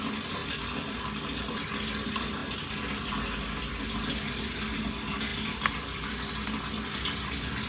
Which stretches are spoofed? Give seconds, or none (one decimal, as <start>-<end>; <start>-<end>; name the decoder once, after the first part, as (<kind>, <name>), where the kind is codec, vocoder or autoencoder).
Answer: none